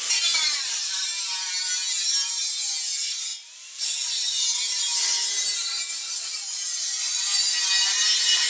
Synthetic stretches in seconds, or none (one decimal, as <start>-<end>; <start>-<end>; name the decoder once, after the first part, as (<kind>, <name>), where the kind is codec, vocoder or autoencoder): none